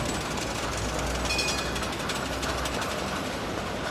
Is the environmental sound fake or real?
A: real